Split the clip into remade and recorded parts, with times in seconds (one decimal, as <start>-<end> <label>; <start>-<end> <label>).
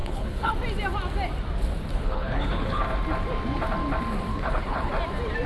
0.0-0.5 remade; 0.5-1.9 recorded; 1.9-2.8 remade; 2.8-4.3 recorded; 4.3-4.9 remade; 4.9-5.5 recorded